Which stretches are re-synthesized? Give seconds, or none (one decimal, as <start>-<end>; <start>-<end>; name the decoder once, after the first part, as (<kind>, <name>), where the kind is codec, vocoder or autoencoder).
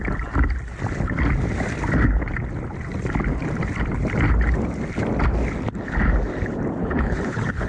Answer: 6.8-7.7 (codec, HILCodec)